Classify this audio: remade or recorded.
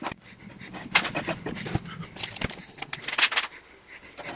remade